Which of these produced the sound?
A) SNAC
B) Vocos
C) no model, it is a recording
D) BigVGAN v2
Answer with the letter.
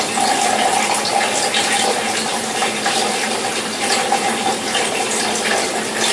C